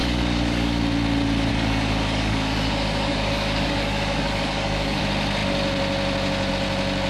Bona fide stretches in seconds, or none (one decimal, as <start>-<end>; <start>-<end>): 0.8-1.5; 5.0-7.1